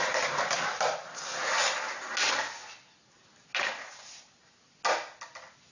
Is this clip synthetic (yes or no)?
no